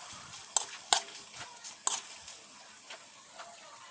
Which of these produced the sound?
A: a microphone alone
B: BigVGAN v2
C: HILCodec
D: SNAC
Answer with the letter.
A